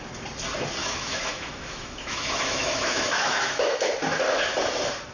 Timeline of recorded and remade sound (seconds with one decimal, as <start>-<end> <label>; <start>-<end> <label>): 0.0-0.8 recorded; 0.8-3.9 remade; 3.9-5.1 recorded